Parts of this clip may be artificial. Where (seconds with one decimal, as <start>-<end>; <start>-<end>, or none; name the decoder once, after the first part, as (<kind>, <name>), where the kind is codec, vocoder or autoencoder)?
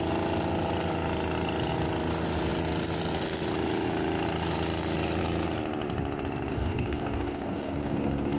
6.5-8.4 (codec, DAC)